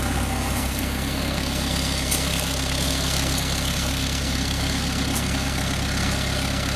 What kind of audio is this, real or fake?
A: fake